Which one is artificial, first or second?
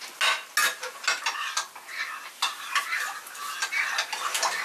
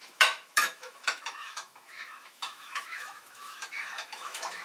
second